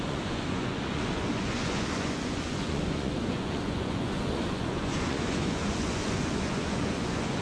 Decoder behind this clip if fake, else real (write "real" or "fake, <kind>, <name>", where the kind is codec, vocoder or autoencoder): fake, vocoder, Vocos